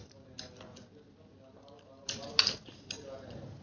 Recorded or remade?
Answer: recorded